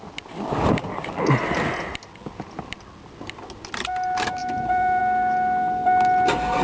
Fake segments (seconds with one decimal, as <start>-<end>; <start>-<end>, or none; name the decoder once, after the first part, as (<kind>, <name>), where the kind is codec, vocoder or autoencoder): 4.4-5.0 (vocoder, BigVGAN v2)